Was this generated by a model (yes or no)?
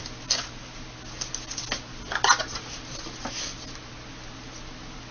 no